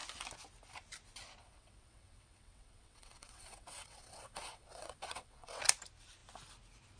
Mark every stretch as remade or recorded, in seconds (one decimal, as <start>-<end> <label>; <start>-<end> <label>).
0.0-1.4 recorded; 1.4-5.6 remade; 5.6-7.0 recorded